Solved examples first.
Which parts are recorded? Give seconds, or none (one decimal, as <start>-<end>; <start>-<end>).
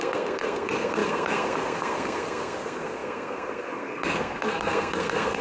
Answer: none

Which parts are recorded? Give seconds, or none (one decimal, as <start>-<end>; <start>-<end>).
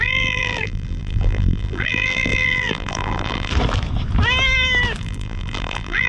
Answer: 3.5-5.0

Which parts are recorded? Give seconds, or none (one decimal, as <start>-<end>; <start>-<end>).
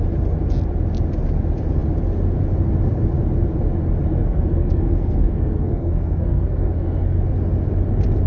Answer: 0.0-4.2; 7.2-8.3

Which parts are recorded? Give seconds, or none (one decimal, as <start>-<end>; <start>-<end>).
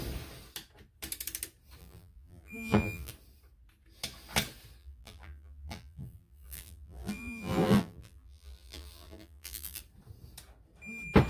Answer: 0.0-1.8; 3.1-4.8; 9.8-11.3